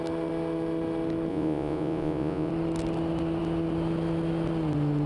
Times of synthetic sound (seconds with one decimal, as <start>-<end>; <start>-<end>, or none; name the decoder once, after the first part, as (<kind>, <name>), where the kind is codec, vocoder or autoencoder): 1.3-2.5 (vocoder, Vocos)